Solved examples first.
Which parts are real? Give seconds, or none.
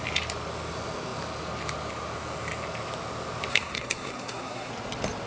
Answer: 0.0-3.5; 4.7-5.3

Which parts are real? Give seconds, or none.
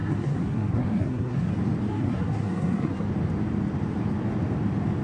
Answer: 1.5-1.9; 3.1-5.0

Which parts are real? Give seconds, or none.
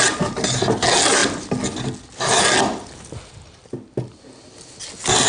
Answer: 0.0-5.3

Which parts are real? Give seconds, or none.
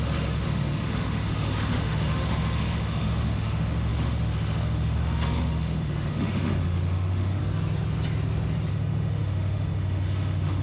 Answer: 7.4-8.7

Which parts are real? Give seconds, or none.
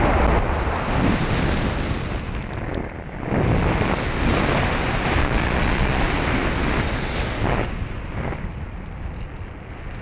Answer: 0.0-5.2; 6.0-10.0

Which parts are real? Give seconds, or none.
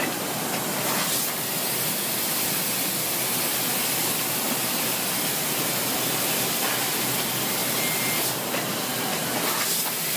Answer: 0.0-10.2